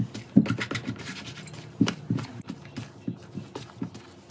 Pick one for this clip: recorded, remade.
recorded